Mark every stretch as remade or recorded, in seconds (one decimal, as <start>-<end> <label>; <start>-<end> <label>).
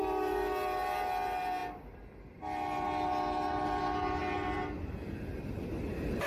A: 0.0-6.3 recorded